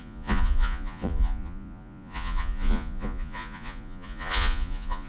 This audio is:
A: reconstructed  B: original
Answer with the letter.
A